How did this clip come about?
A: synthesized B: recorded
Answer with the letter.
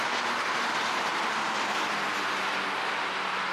B